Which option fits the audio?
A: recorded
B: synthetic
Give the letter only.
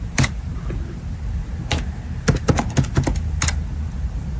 A